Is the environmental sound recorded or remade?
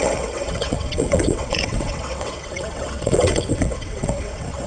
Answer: remade